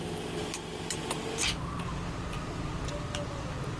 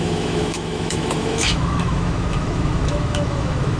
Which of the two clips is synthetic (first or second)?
second